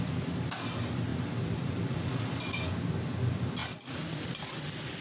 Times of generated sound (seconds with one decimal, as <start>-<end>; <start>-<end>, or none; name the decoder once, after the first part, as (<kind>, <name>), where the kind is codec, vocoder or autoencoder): 1.1-2.1 (vocoder, BigVGAN v2); 3.6-4.2